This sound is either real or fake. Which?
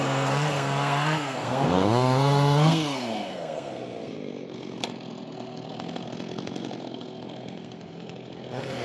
fake